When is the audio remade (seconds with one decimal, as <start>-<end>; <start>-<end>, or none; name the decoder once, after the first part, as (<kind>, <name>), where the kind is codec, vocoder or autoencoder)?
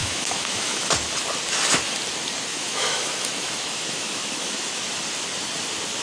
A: 0.0-0.9 (autoencoder, DAC-VAE); 2.5-4.8